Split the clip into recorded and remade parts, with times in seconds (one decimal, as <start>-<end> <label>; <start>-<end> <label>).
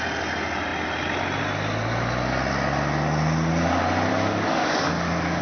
0.0-4.1 recorded; 4.1-5.4 remade